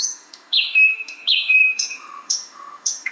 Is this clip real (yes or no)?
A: no